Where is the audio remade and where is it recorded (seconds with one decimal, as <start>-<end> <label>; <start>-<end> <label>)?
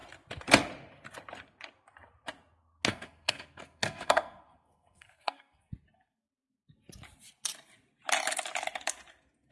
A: 0.0-2.9 recorded; 2.9-5.7 remade; 5.7-9.5 recorded